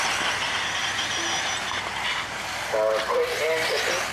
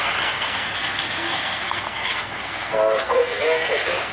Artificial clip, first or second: second